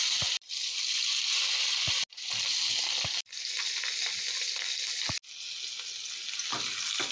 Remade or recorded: recorded